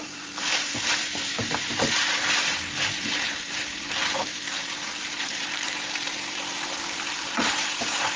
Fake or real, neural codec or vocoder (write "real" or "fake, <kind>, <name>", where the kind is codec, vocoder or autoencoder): fake, vocoder, BigVGAN v2